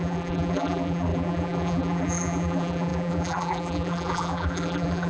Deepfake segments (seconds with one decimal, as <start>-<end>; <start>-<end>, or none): 0.0-5.1